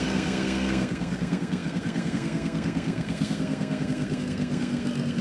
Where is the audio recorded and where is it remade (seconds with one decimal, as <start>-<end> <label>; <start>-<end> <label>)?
0.0-5.2 remade